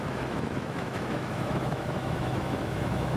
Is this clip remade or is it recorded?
remade